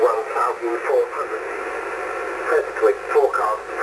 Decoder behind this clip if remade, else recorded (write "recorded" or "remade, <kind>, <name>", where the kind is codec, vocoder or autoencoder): recorded